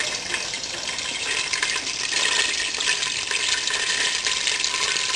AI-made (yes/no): no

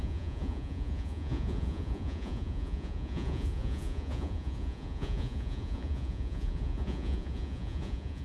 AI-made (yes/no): yes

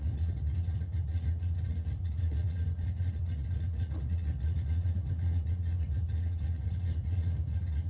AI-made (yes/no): yes